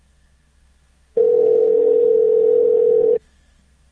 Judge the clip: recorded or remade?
remade